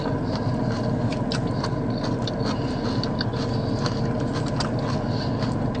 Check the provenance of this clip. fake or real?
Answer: real